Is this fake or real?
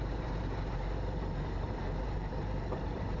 fake